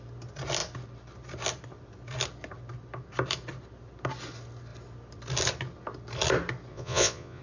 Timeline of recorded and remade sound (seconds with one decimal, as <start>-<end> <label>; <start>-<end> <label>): 0.0-6.7 recorded; 6.7-7.4 remade